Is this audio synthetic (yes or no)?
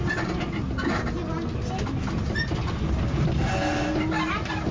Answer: no